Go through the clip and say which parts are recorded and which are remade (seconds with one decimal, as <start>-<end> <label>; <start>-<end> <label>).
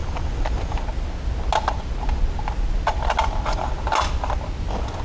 0.0-5.0 recorded